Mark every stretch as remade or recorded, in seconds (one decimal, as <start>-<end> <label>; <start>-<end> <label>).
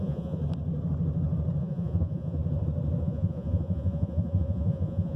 0.0-0.4 remade; 0.4-1.6 recorded; 1.6-2.4 remade; 2.4-3.0 recorded; 3.0-5.2 remade